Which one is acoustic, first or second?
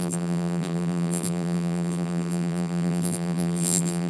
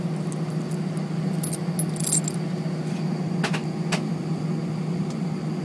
second